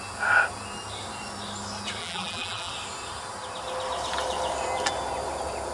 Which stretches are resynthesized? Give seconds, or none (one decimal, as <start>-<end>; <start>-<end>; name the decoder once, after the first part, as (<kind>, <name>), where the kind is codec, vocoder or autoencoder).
2.0-2.7 (vocoder, BigVGAN v2)